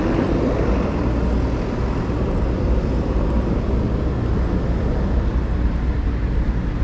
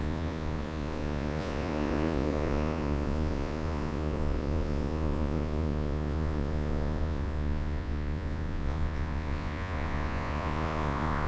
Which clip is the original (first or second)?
first